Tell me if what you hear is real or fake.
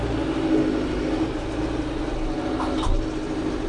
real